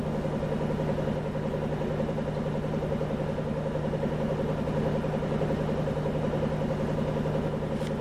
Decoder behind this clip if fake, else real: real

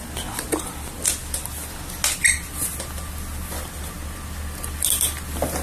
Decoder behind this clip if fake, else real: real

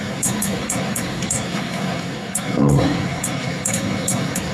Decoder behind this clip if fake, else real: fake, codec, SNAC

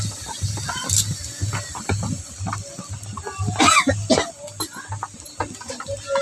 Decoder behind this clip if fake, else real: real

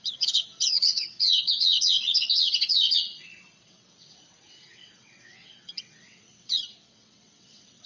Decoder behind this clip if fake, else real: fake, vocoder, WaveNeXt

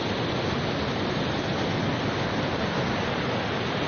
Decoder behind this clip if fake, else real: real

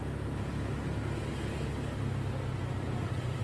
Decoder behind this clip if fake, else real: real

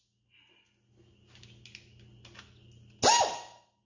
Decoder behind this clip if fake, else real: real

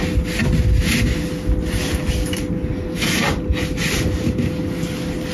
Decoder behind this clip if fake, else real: real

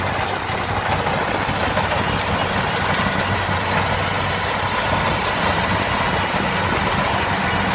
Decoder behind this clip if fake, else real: real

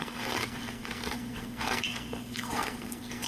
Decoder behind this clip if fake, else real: fake, codec, SNAC